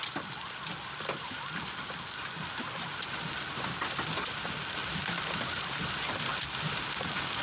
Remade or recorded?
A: recorded